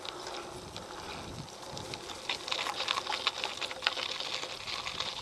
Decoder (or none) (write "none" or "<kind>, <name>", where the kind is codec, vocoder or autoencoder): none